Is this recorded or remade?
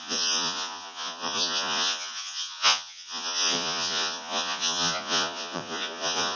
remade